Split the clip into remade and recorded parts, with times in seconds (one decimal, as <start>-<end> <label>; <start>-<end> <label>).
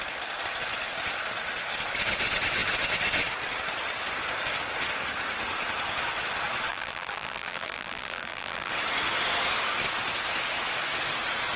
0.0-6.7 recorded; 6.7-8.7 remade; 8.7-11.6 recorded